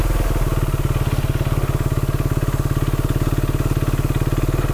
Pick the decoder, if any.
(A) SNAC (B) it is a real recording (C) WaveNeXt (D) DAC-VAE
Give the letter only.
B